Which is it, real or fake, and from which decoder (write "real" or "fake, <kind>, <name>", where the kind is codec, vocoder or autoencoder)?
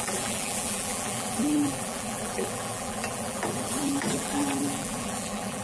fake, vocoder, BigVGAN v2